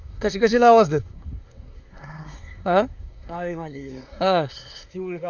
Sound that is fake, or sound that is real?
fake